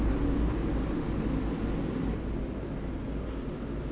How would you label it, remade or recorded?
recorded